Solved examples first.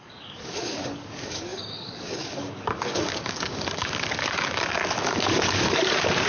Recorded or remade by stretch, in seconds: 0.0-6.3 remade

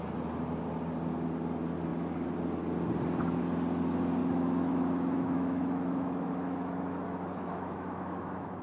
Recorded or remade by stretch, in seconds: 0.0-4.2 recorded; 4.2-8.6 remade